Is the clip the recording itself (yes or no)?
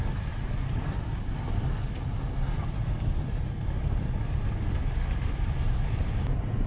yes